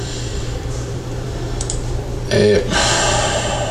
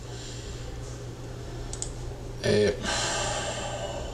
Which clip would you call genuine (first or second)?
second